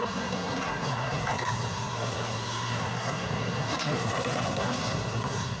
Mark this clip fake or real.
fake